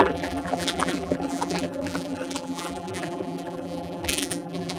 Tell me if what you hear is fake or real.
fake